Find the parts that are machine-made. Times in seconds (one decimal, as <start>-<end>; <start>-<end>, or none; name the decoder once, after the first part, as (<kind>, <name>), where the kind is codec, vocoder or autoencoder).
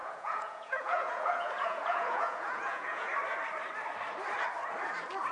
0.0-3.1 (vocoder, Vocos)